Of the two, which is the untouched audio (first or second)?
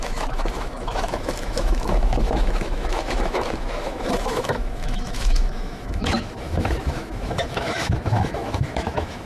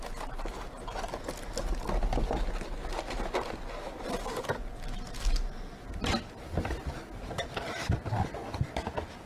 second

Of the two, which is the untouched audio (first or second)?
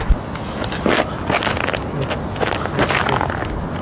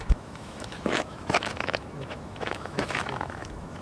first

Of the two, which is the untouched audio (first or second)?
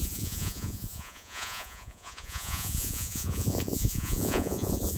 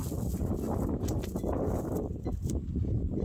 second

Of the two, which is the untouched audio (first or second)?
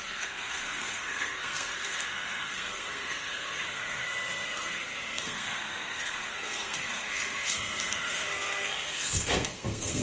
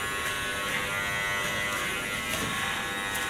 second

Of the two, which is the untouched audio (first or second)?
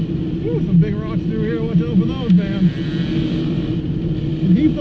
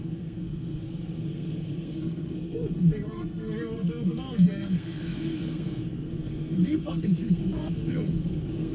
first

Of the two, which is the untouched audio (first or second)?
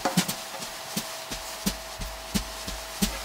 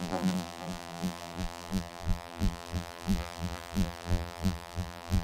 first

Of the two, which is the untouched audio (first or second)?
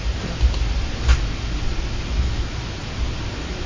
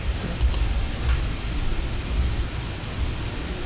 first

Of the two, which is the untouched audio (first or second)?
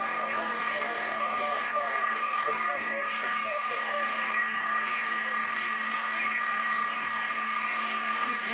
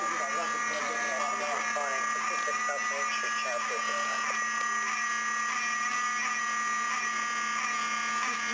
second